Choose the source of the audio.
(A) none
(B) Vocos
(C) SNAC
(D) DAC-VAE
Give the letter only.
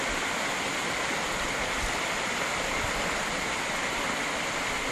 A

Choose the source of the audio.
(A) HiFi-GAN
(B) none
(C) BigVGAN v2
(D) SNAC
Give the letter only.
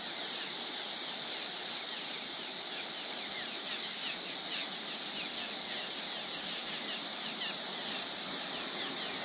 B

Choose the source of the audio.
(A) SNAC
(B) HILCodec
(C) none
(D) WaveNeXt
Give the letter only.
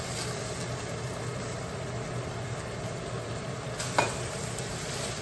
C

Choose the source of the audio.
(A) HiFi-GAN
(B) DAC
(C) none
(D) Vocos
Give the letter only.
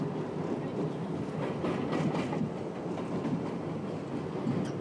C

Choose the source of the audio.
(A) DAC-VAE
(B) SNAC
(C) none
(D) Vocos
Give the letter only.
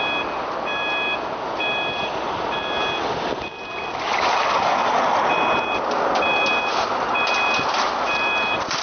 C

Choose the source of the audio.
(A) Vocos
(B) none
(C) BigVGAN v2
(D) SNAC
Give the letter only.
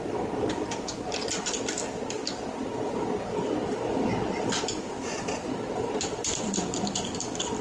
B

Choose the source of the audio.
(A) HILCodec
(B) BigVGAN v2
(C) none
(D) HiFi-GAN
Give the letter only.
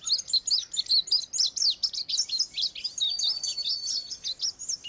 C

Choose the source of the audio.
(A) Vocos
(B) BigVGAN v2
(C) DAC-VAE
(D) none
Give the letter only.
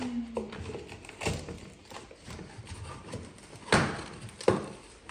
D